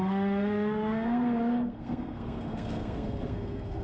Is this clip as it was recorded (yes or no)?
no